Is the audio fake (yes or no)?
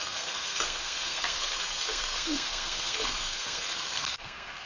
yes